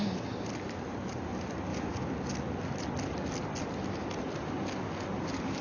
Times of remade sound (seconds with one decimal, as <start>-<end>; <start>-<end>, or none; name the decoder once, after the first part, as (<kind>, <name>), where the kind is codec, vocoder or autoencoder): none